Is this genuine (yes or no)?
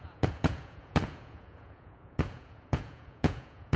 no